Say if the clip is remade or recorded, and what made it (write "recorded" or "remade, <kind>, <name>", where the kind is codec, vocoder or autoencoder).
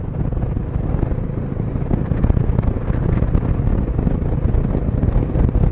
recorded